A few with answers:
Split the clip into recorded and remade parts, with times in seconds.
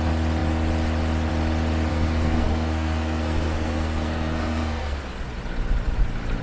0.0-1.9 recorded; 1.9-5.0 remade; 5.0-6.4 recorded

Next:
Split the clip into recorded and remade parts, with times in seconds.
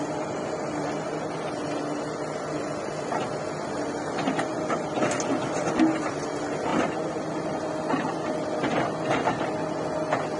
0.0-10.4 recorded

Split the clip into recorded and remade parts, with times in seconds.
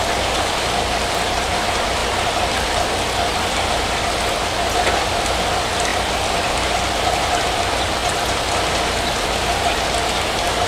0.0-10.7 recorded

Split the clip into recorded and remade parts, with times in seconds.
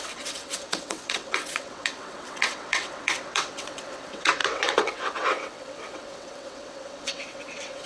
0.0-7.9 remade